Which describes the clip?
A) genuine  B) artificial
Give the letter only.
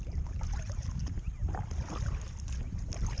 A